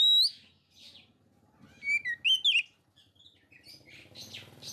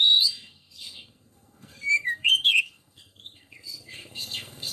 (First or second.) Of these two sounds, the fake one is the second